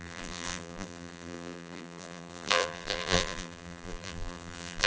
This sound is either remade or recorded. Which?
remade